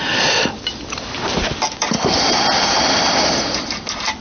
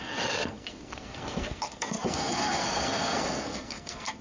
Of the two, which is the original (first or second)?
first